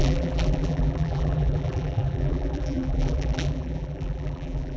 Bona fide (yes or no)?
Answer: no